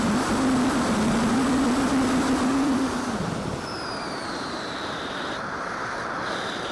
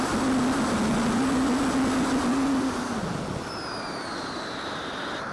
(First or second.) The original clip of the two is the second